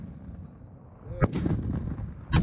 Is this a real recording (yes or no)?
yes